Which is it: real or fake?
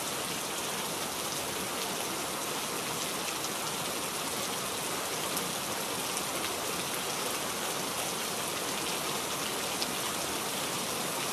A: real